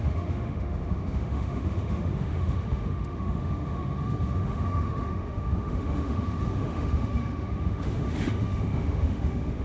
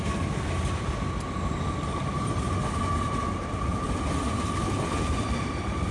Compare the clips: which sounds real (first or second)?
second